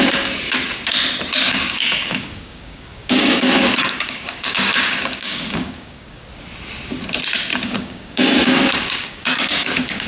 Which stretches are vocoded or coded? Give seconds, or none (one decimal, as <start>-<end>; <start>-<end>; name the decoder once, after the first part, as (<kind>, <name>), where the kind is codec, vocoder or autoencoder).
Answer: 1.4-6.2 (codec, DAC); 7.5-10.1